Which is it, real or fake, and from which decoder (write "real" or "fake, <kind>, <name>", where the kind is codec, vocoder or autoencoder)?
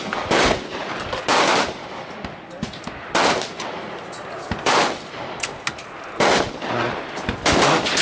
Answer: real